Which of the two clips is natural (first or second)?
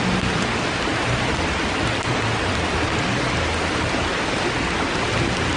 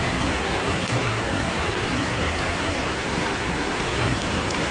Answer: first